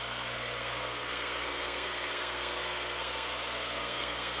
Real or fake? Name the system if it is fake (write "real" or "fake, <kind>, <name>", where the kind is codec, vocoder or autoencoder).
fake, codec, SNAC